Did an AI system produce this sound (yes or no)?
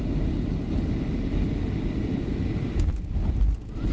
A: no